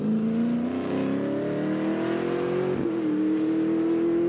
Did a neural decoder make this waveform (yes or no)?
no